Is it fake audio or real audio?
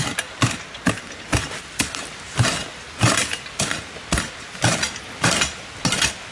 real